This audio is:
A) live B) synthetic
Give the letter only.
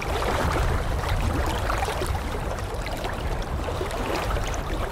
B